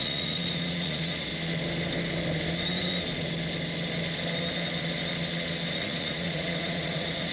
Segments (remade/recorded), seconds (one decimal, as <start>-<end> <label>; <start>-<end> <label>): 0.0-1.3 remade; 1.3-5.7 recorded; 5.7-7.3 remade